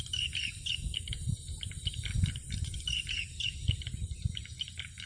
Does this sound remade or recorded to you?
remade